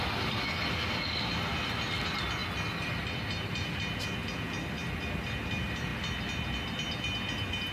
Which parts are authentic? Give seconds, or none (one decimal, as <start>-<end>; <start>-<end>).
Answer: 0.0-2.4; 3.9-7.7